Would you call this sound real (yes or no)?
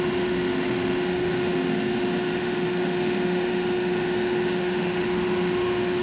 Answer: no